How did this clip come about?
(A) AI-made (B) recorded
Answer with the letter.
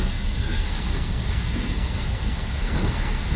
A